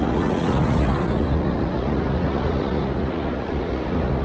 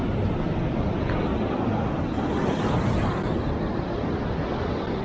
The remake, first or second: first